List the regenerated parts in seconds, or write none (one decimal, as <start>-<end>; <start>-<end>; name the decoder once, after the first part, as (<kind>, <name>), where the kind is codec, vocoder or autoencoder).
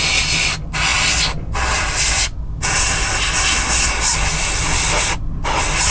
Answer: none